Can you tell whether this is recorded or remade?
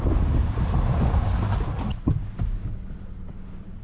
recorded